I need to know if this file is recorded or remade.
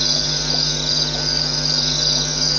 recorded